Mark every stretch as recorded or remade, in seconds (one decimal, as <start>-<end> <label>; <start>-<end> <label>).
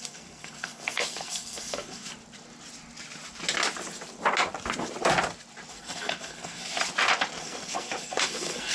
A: 0.0-2.1 remade; 2.1-5.7 recorded; 5.7-6.7 remade; 6.7-7.4 recorded; 7.4-8.7 remade